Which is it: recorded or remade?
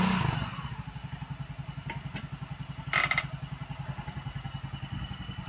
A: recorded